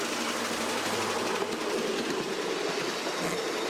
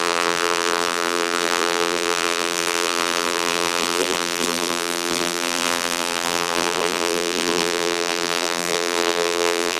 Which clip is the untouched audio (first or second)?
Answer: first